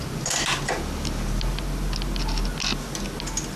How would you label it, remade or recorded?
recorded